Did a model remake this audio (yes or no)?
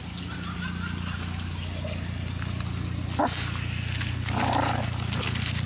no